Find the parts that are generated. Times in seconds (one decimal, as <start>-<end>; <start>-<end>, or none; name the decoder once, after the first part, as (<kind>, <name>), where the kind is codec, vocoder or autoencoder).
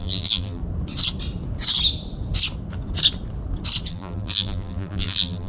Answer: 0.0-0.6 (vocoder, BigVGAN v2); 3.9-5.5